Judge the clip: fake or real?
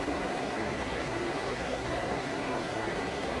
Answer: fake